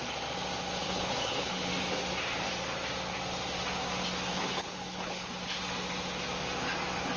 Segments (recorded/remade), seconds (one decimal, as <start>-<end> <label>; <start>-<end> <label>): 0.0-0.8 recorded; 0.8-1.7 remade; 1.7-4.3 recorded; 4.3-5.3 remade; 5.3-7.2 recorded